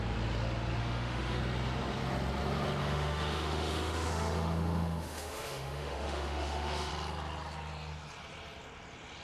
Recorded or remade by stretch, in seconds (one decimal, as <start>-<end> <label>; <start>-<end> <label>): 0.0-0.8 recorded; 0.8-1.4 remade; 1.4-2.8 recorded; 2.8-6.9 remade; 6.9-9.2 recorded